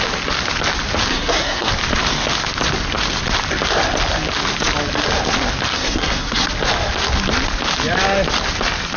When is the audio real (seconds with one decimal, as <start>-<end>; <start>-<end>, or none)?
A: 0.0-1.1; 1.7-5.7; 6.5-9.0